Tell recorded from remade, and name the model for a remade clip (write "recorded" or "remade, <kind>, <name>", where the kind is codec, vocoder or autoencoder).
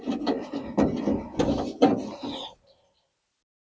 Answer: recorded